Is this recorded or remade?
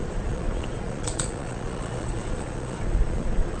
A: remade